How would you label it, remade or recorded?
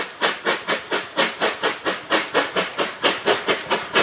recorded